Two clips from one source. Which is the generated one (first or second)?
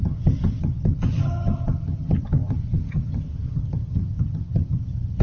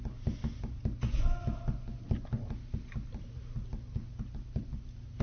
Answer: first